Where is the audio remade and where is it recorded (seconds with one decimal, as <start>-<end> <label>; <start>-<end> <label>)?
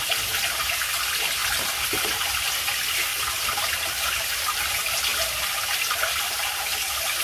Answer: 0.0-3.1 recorded; 3.1-4.0 remade; 4.0-5.1 recorded; 5.1-6.6 remade; 6.6-7.2 recorded